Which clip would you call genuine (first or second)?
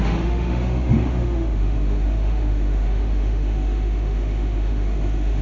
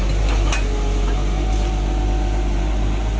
second